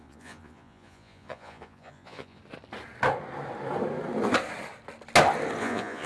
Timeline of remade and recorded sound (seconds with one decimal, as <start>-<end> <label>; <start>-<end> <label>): 0.0-2.4 remade; 2.4-5.6 recorded; 5.6-6.1 remade